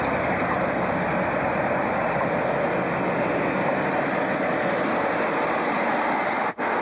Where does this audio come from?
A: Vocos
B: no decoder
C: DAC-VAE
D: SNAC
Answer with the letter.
B